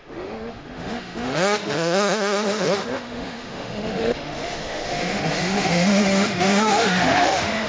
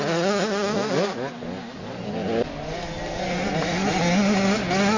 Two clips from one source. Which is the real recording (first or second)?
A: second